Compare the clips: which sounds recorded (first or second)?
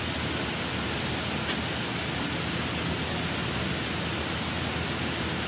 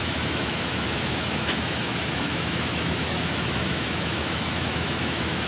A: first